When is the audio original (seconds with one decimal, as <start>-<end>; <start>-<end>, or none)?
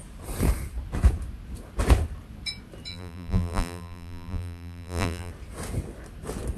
0.0-2.9; 5.3-6.6